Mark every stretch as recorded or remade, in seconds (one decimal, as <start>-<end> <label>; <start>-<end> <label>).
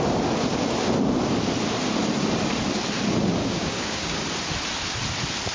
0.0-3.4 recorded; 3.4-4.2 remade; 4.2-5.5 recorded